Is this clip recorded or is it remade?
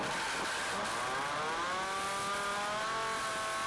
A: recorded